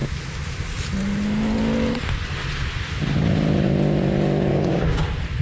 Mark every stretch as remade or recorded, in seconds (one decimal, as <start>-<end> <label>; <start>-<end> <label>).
0.0-4.5 recorded; 4.5-5.0 remade; 5.0-5.4 recorded